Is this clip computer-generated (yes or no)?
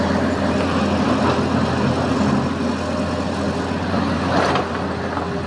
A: no